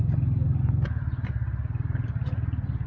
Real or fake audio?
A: real